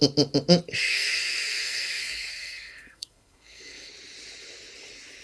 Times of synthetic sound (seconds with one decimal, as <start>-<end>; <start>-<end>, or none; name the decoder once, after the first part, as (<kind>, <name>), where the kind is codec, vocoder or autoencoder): 0.8-3.9 (codec, SNAC)